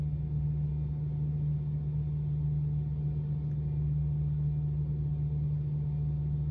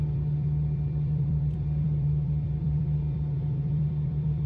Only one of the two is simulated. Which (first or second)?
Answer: second